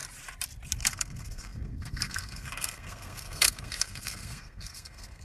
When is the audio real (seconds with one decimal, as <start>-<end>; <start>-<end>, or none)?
0.0-0.8